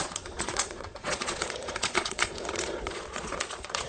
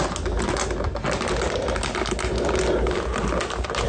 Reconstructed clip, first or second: first